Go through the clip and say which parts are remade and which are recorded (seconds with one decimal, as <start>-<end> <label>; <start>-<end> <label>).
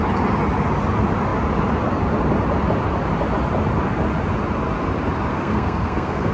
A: 0.0-5.3 recorded; 5.3-6.3 remade